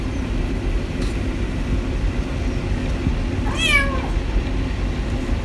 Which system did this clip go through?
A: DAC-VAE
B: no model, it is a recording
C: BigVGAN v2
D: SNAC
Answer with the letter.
B